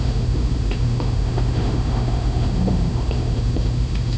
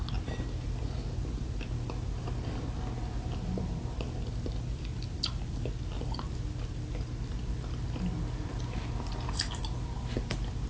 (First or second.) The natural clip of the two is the second